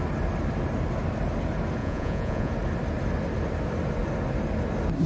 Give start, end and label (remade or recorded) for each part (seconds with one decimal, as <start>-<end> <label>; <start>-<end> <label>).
0.0-1.8 recorded; 1.8-2.5 remade; 2.5-5.1 recorded